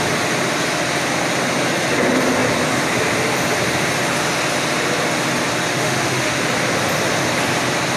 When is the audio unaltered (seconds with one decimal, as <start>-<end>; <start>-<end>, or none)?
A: 0.0-5.7; 6.4-8.0